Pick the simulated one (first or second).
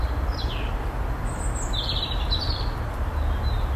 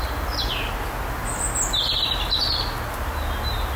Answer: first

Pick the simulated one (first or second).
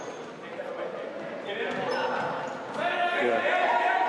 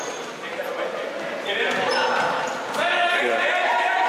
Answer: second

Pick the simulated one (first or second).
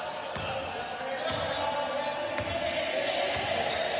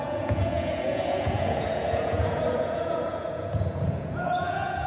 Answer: second